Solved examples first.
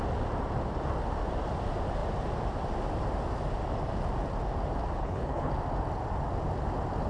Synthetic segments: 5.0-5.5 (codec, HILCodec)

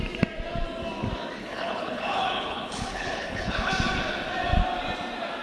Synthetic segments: 1.4-3.7 (codec, HILCodec)

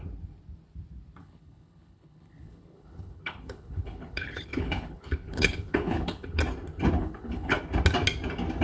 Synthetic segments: 1.2-6.4 (codec, HILCodec); 7.0-7.6

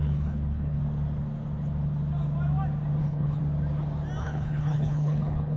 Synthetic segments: 0.0-0.8 (codec, HILCodec); 3.0-3.4; 4.2-5.6